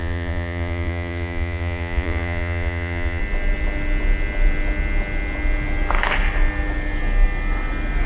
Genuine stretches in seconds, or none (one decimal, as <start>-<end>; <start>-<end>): 3.2-8.1